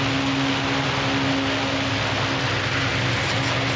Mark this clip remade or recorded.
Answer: recorded